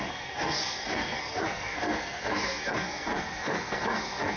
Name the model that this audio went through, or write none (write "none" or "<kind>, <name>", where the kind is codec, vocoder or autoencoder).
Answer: codec, SNAC